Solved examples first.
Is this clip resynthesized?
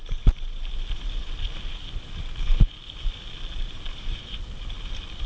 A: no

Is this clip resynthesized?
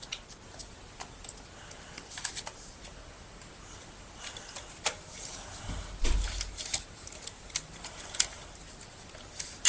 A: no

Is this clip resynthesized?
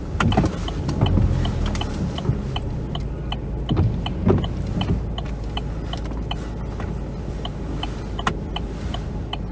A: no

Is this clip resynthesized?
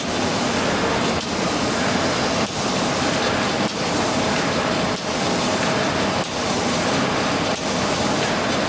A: no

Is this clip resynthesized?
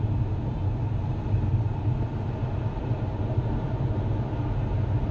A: no